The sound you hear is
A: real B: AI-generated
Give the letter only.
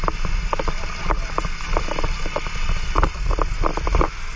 A